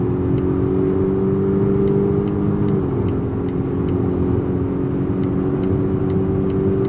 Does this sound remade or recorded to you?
recorded